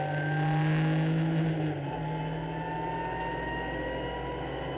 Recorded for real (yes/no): yes